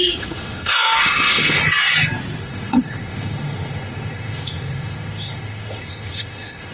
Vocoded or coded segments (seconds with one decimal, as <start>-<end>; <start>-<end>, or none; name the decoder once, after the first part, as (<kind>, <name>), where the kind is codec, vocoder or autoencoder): 0.0-1.6 (autoencoder, DAC-VAE); 2.4-6.7